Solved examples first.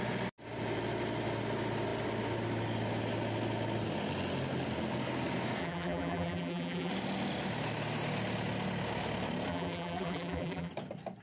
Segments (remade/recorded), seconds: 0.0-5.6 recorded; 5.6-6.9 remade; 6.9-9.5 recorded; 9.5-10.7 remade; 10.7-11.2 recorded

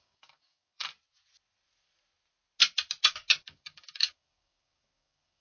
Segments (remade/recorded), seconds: 0.0-0.8 remade; 0.8-3.4 recorded; 3.4-5.4 remade

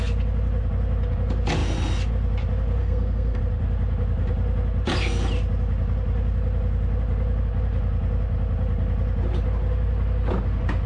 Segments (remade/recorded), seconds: 0.0-2.8 recorded; 2.8-3.4 remade; 3.4-10.9 recorded

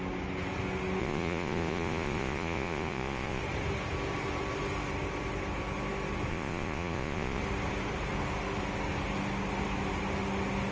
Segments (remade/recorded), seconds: 0.0-1.0 recorded; 1.0-3.4 remade; 3.4-6.3 recorded; 6.3-7.4 remade; 7.4-10.7 recorded

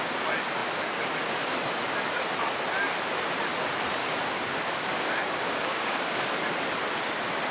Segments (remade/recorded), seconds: 0.0-4.0 recorded; 4.0-6.3 remade; 6.3-7.5 recorded

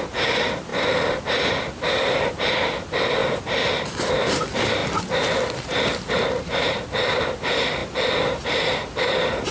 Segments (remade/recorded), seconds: 0.0-3.2 remade; 3.2-4.1 recorded; 4.1-9.5 remade